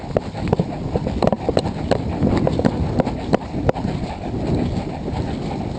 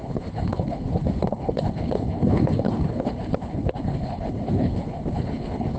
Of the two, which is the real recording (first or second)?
first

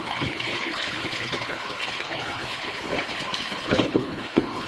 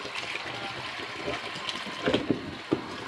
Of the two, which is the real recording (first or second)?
second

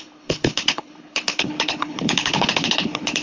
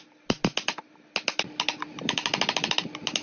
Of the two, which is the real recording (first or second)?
second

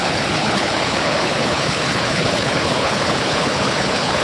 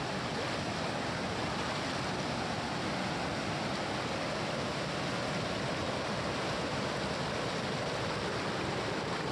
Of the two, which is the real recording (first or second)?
second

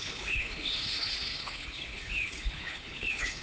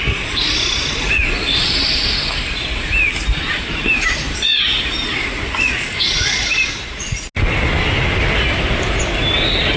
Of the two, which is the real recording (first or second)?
second